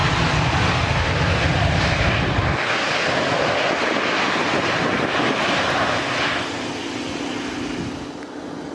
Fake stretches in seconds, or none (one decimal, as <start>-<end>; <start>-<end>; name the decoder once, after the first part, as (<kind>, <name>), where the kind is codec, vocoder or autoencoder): none